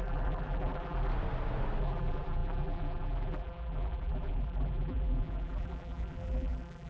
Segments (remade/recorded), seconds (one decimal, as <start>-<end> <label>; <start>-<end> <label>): 0.0-1.1 remade; 1.1-1.8 recorded; 1.8-6.9 remade